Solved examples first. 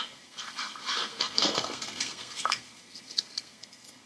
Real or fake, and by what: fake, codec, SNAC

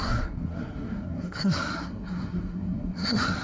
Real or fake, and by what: fake, codec, SNAC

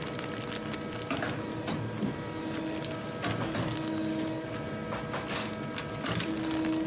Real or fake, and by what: real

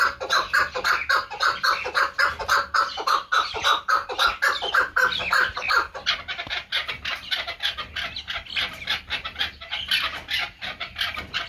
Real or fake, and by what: real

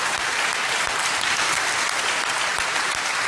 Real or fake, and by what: fake, vocoder, BigVGAN v2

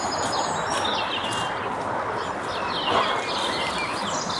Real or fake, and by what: real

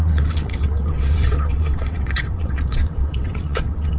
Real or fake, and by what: fake, vocoder, WaveNeXt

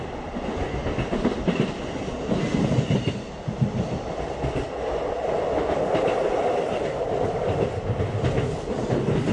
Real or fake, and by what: real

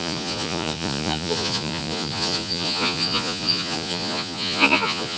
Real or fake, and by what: fake, vocoder, Vocos